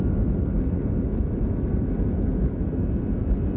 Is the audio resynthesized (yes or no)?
no